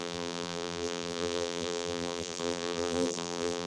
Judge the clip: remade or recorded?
remade